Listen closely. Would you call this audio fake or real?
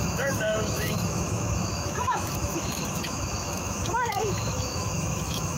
fake